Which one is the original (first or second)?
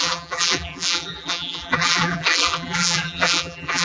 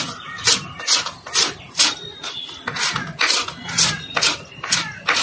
second